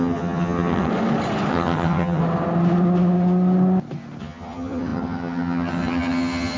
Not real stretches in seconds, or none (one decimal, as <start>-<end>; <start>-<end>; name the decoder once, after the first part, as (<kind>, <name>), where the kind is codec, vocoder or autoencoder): 0.0-0.9 (vocoder, HiFi-GAN); 1.5-2.2; 4.2-6.6